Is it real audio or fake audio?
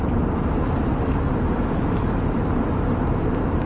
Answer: fake